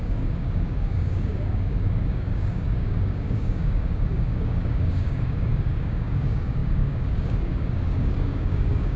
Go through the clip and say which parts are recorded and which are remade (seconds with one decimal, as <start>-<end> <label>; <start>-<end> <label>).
0.0-9.0 remade